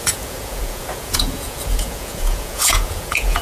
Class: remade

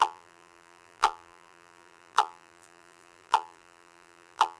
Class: remade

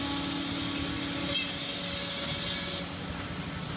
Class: recorded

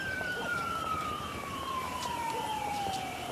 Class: remade